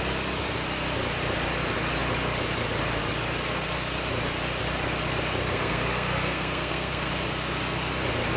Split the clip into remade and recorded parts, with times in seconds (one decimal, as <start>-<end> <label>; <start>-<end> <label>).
0.0-5.4 recorded; 5.4-7.1 remade; 7.1-8.4 recorded